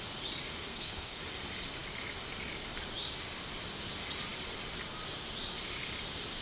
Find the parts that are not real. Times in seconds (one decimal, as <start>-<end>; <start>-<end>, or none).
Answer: 0.7-1.2